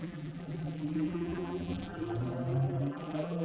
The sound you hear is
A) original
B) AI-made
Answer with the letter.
B